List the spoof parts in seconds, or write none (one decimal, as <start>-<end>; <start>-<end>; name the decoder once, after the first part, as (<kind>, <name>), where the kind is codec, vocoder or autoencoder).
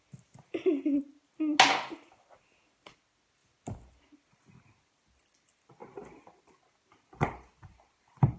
none